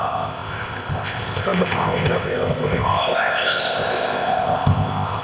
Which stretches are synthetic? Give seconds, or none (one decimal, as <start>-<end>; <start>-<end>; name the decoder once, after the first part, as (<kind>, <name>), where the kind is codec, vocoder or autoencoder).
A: 0.0-5.2 (codec, ZipCodec)